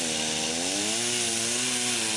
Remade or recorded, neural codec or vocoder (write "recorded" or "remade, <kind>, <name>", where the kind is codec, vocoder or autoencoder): recorded